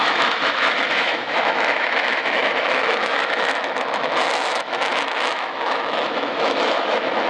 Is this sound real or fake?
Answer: fake